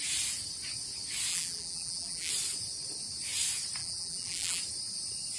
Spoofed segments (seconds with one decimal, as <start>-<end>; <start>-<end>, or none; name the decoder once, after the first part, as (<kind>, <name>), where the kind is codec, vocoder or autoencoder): 1.3-2.3 (vocoder, BigVGAN v2); 3.8-4.6